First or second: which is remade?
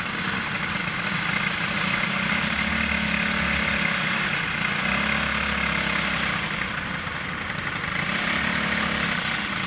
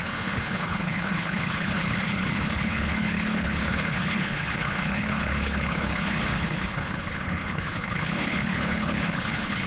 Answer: second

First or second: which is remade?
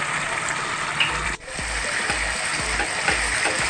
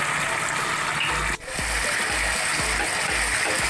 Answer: first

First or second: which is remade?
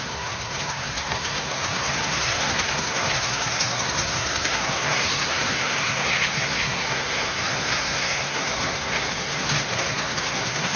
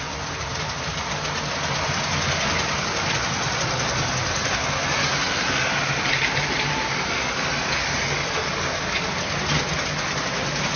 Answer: first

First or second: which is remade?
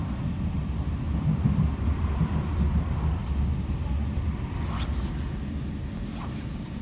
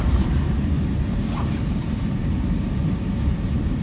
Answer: second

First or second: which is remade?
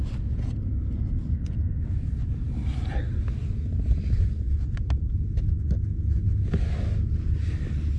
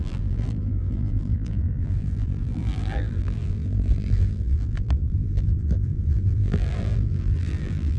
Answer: second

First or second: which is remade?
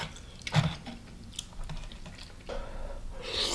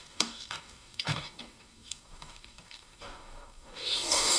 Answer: second